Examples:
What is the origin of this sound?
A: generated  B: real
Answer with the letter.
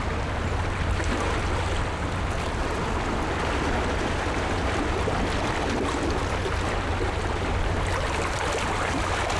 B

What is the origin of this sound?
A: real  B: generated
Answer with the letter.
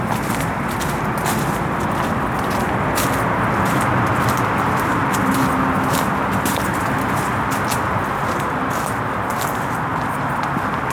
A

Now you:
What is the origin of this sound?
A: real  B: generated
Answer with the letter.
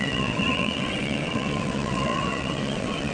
B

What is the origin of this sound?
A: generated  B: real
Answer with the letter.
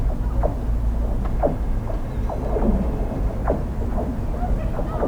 B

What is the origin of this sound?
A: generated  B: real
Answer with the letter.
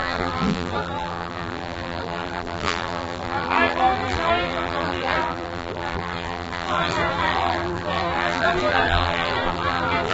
A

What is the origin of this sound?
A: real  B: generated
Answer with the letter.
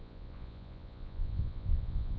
B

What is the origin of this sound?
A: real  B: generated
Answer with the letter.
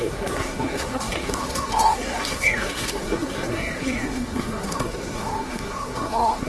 B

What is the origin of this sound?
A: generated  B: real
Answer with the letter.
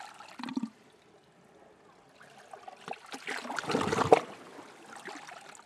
B